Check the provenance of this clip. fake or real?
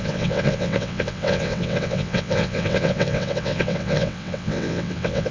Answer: fake